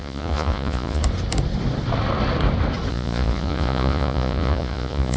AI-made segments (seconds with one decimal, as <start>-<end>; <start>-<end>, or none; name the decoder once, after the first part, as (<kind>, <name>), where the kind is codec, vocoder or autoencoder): 0.0-1.0 (vocoder, Vocos); 2.9-5.2